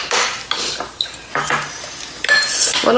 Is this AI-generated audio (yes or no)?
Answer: no